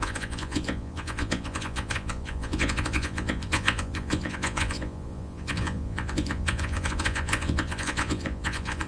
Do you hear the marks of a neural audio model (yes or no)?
yes